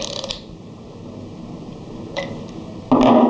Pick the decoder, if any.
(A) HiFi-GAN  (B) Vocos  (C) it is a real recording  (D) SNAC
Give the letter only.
C